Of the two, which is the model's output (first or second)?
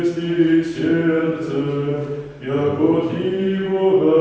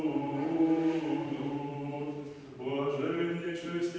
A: second